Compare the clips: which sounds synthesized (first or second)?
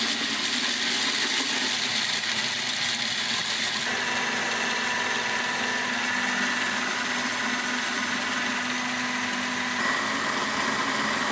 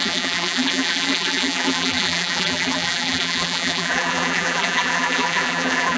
second